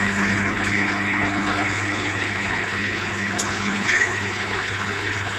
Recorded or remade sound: remade